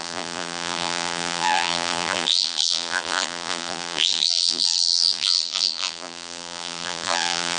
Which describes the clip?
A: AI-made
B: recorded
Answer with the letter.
A